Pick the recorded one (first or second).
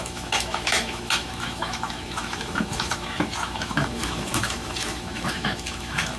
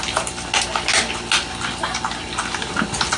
second